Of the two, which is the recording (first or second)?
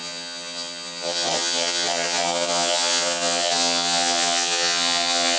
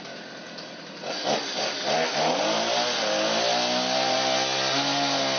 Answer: second